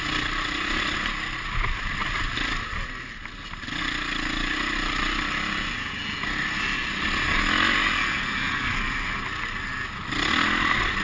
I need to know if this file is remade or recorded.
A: recorded